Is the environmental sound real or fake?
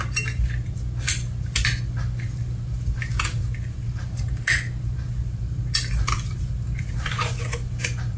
real